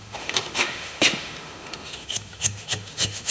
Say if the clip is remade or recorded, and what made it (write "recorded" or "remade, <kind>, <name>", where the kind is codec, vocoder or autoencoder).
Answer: remade, autoencoder, DAC-VAE